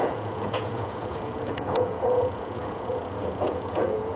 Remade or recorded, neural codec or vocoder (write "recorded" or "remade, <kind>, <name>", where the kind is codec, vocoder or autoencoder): remade, vocoder, Vocos